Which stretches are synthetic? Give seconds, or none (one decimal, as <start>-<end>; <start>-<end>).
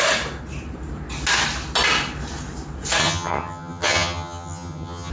3.0-5.1